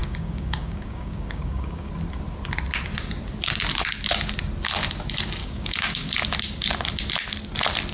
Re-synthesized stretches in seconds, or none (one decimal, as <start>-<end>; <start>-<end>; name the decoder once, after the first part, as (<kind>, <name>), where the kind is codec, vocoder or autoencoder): 0.0-1.9 (codec, DAC); 5.4-6.1